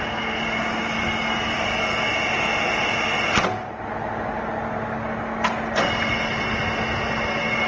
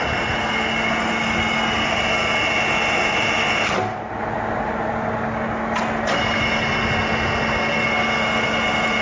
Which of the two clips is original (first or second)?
second